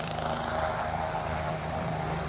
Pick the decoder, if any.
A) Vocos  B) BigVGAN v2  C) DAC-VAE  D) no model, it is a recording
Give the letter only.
B